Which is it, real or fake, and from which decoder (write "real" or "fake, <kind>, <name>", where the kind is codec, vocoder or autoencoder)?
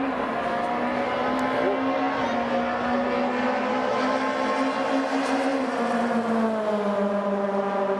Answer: real